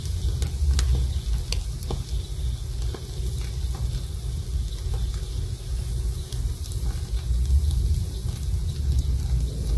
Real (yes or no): yes